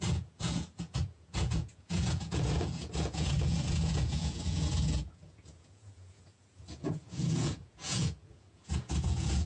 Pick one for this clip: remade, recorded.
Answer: remade